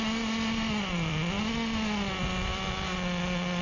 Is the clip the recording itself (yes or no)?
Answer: yes